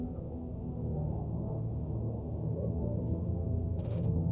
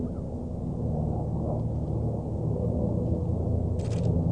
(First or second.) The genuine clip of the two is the second